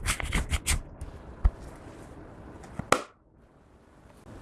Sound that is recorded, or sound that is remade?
recorded